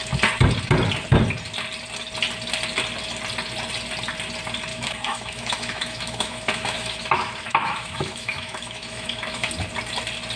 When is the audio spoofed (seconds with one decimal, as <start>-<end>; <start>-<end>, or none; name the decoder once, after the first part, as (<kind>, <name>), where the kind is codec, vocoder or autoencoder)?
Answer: 4.7-9.5 (autoencoder, DAC-VAE)